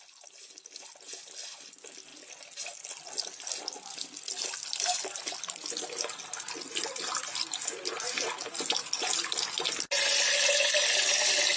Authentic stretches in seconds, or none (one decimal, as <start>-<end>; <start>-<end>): 0.0-11.6